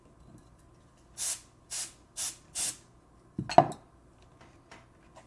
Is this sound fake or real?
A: real